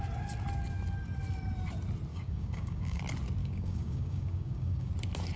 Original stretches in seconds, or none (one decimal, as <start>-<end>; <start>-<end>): 0.0-2.1; 3.0-3.4; 4.9-5.4